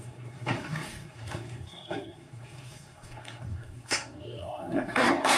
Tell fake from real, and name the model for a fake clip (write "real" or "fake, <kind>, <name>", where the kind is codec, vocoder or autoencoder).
fake, codec, SNAC